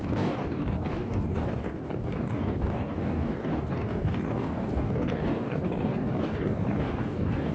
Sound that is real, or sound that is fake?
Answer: fake